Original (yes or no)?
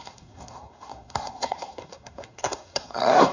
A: no